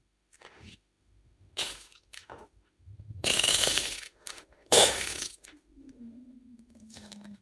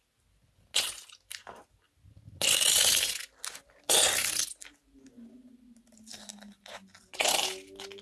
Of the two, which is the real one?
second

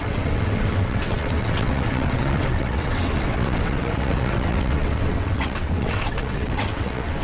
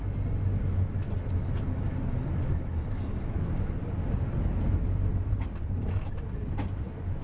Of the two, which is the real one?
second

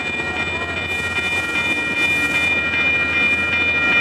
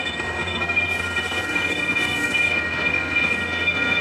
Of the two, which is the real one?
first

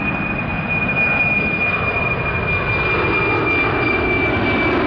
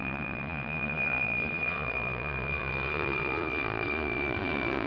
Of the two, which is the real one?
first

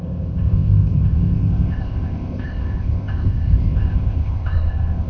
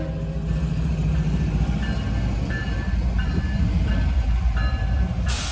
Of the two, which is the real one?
second